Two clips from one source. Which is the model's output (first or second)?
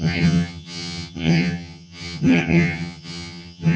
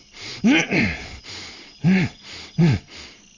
first